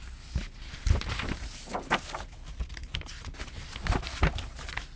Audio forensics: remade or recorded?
recorded